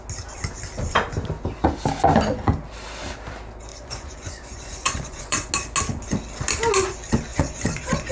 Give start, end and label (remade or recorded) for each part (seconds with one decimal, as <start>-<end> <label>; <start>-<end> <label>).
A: 0.0-3.7 recorded; 3.7-5.5 remade; 5.5-7.3 recorded; 7.3-8.1 remade